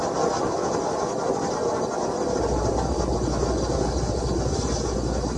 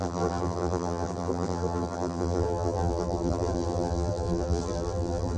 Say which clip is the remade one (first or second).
second